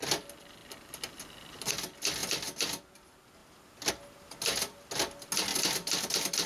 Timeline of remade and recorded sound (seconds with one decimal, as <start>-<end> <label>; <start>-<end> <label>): 0.0-5.5 recorded; 5.5-6.1 remade; 6.1-6.5 recorded